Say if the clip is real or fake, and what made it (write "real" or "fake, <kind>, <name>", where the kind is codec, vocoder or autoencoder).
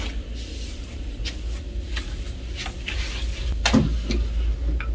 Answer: real